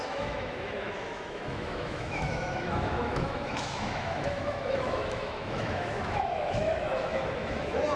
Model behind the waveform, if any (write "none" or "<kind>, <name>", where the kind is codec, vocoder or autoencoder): autoencoder, DAC-VAE